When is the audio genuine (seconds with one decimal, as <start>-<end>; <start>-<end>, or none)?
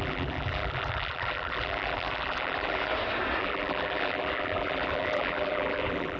2.9-3.4